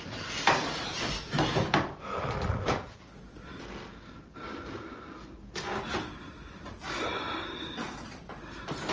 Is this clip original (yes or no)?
yes